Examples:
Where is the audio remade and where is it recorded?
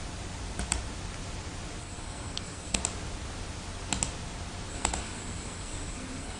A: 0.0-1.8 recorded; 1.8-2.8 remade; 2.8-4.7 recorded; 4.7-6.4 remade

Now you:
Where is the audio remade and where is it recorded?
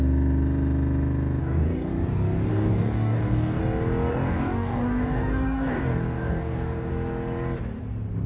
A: 0.0-1.4 recorded; 1.4-1.9 remade; 1.9-2.5 recorded; 2.5-3.6 remade; 3.6-4.1 recorded; 4.1-6.9 remade; 6.9-8.3 recorded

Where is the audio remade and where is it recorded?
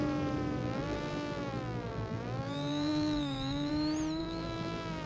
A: 0.0-0.6 recorded; 0.6-3.7 remade; 3.7-4.2 recorded; 4.2-5.1 remade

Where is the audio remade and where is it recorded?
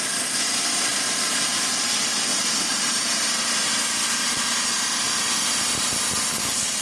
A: 0.0-0.9 recorded; 0.9-1.7 remade; 1.7-2.3 recorded; 2.3-3.1 remade; 3.1-6.8 recorded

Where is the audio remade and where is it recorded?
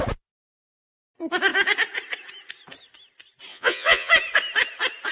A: 0.0-3.5 recorded; 3.5-4.1 remade; 4.1-5.1 recorded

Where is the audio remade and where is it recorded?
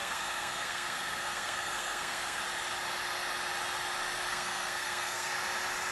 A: 0.0-2.4 remade; 2.4-4.3 recorded; 4.3-5.3 remade; 5.3-5.9 recorded